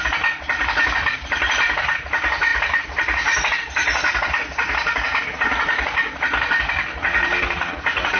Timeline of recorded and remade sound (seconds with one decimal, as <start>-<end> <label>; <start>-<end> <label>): 0.0-8.2 recorded